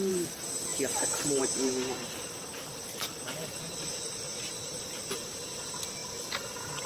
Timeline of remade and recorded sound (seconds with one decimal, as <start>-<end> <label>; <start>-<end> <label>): 0.0-6.0 remade; 6.0-6.9 recorded